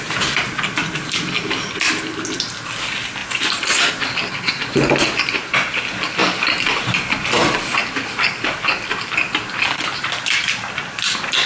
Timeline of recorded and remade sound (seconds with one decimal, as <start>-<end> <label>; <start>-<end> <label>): 0.0-3.2 recorded; 3.2-4.3 remade; 4.3-11.5 recorded